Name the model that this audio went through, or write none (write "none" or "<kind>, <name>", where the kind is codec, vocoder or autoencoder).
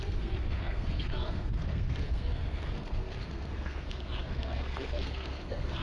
codec, SNAC